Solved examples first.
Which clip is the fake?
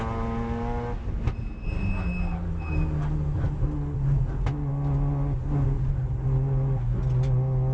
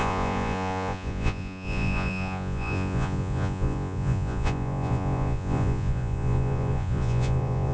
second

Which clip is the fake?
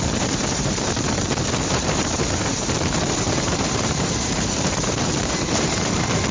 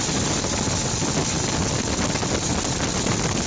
first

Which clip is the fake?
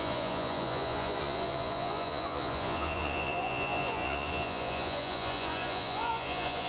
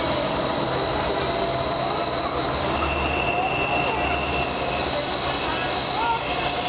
first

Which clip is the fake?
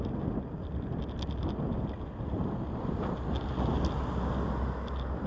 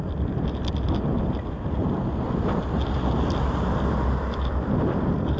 second